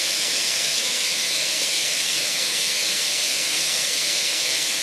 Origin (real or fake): fake